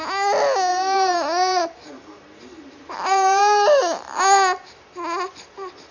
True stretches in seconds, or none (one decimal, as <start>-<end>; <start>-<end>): 0.0-0.7; 4.2-5.9